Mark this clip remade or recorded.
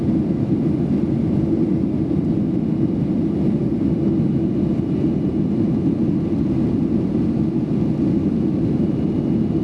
recorded